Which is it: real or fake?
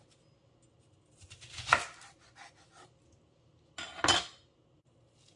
real